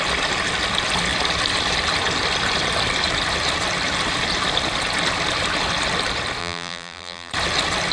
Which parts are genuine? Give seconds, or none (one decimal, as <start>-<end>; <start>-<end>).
0.0-6.4; 7.3-7.9